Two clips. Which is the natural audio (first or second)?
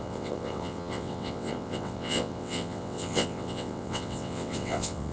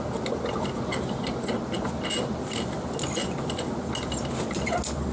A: second